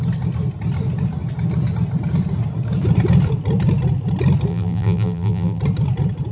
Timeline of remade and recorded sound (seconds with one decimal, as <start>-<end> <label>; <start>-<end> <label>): 0.0-4.5 recorded; 4.5-5.6 remade; 5.6-6.3 recorded